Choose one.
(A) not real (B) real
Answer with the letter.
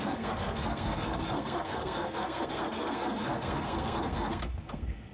A